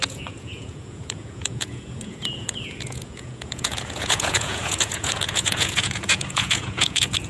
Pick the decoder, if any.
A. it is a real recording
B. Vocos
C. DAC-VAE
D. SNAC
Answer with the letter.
B